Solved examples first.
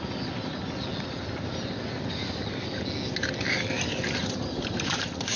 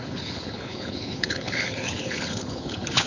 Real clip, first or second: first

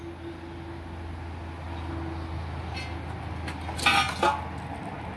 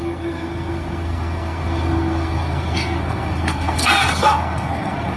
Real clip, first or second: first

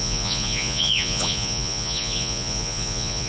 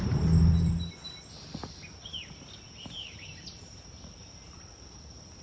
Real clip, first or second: second